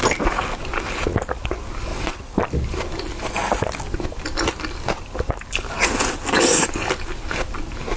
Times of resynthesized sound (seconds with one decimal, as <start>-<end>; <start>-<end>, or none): 1.9-2.4